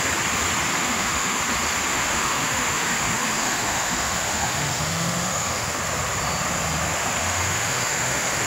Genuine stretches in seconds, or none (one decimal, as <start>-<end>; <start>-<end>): 0.0-0.9; 1.4-1.9; 5.8-7.2